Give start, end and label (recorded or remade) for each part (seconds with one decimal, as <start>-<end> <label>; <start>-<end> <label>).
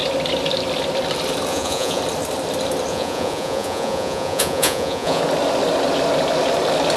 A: 0.0-1.5 recorded; 1.5-2.0 remade; 2.0-2.9 recorded; 2.9-5.2 remade; 5.2-7.0 recorded